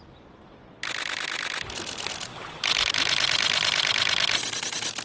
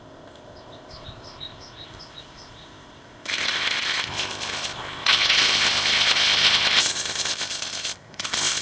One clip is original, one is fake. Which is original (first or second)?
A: first